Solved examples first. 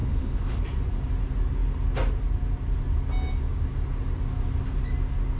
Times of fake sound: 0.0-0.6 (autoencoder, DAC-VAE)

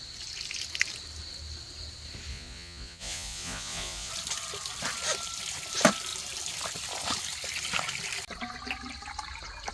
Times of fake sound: 2.3-4.1 (vocoder, Vocos)

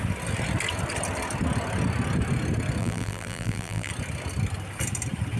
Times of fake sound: 2.8-3.9 (vocoder, BigVGAN v2)

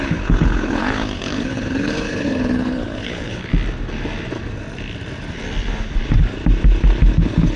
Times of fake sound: 0.0-3.5 (codec, HILCodec); 7.0-7.6

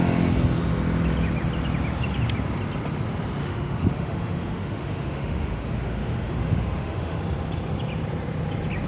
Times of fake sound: 3.4-7.2 (autoencoder, DAC-VAE)